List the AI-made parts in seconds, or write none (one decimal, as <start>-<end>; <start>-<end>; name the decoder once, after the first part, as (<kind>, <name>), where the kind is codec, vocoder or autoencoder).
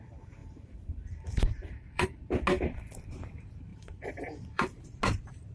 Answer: 0.4-2.2 (vocoder, BigVGAN v2); 3.7-5.0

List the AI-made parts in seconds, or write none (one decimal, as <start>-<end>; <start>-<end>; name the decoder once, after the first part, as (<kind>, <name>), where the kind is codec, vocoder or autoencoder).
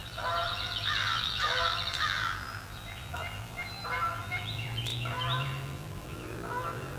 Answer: 0.0-7.0 (vocoder, BigVGAN v2)